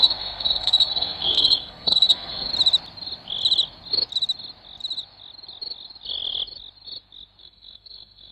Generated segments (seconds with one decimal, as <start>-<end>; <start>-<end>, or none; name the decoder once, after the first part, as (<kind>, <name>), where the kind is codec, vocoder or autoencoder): 0.0-2.5 (codec, SNAC); 7.4-8.3